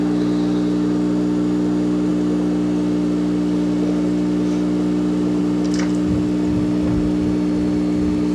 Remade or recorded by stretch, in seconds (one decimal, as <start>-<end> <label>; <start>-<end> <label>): 0.0-8.3 recorded